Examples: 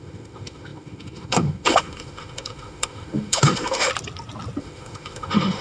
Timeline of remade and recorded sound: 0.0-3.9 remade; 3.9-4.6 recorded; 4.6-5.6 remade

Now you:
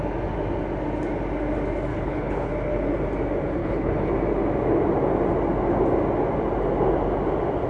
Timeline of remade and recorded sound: 0.0-1.9 recorded; 1.9-2.5 remade; 2.5-3.6 recorded; 3.6-4.1 remade; 4.1-7.7 recorded

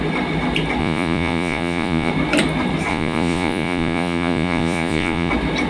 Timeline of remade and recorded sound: 0.0-0.8 recorded; 0.8-2.1 remade; 2.1-2.9 recorded; 2.9-5.3 remade; 5.3-5.7 recorded

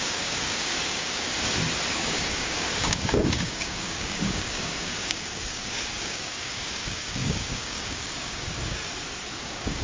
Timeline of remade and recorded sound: 0.0-1.3 remade; 1.3-1.9 recorded; 1.9-8.8 remade; 8.8-9.4 recorded; 9.4-9.8 remade